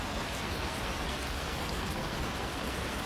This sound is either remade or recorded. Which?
remade